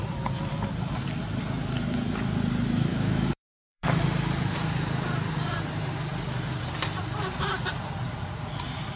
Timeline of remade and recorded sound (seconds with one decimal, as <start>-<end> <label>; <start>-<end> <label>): 0.0-2.9 recorded; 2.9-4.0 remade; 4.0-9.0 recorded